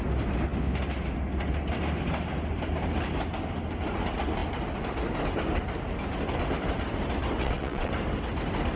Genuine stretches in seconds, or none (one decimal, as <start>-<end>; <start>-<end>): 0.0-7.4; 7.9-8.8